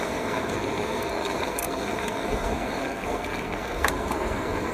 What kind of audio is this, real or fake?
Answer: fake